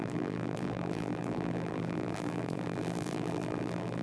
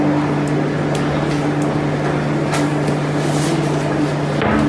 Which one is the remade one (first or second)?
first